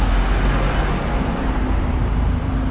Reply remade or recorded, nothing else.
recorded